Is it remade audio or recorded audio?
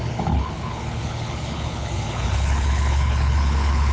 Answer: remade